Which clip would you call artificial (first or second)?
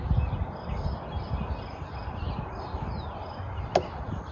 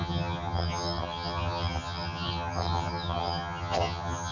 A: second